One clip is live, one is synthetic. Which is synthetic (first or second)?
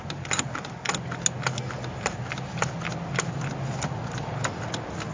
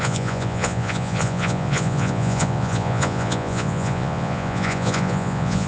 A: second